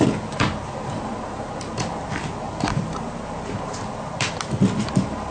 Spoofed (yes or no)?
no